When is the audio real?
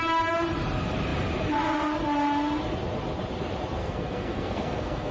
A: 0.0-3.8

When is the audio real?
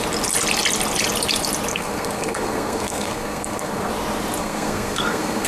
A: 0.0-1.7; 3.9-4.4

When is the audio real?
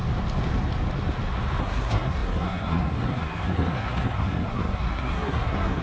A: 0.0-1.6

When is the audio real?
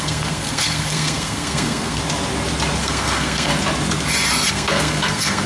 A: 2.0-2.8; 3.5-4.5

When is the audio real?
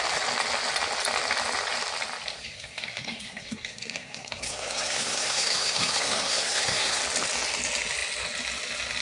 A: 0.0-2.3; 7.0-9.0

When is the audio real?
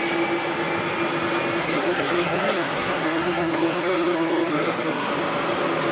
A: 0.0-1.6; 5.1-5.9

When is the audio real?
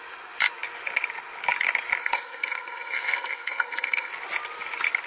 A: 0.0-2.0; 4.1-5.1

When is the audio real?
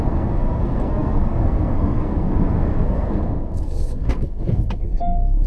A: none